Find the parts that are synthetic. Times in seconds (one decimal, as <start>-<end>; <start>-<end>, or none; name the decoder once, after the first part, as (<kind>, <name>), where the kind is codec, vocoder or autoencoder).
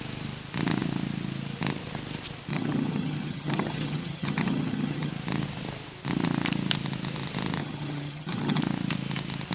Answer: 2.5-5.1 (vocoder, HiFi-GAN); 7.6-8.6